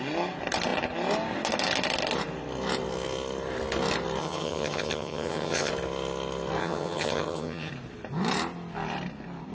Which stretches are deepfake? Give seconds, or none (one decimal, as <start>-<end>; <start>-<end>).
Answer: 4.2-5.7; 6.6-7.7